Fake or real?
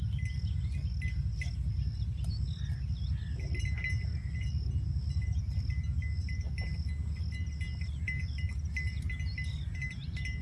real